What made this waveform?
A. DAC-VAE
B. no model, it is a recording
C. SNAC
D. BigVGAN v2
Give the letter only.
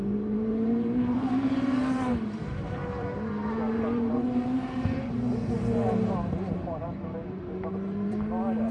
D